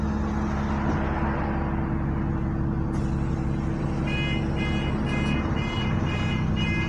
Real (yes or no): yes